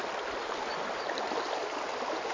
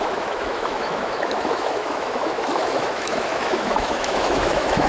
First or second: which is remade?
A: second